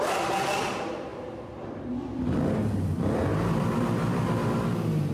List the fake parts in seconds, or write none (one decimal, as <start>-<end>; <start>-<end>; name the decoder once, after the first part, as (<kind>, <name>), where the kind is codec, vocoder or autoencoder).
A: none